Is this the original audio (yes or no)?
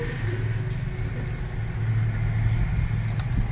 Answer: yes